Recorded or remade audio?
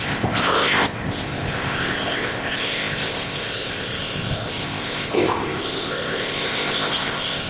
remade